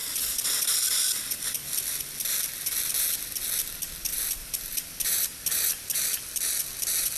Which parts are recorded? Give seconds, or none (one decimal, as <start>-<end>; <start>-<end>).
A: 2.0-4.1; 5.8-7.2